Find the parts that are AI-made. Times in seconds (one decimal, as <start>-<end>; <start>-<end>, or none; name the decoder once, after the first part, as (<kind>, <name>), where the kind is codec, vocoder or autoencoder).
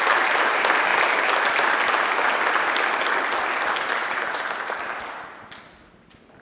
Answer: none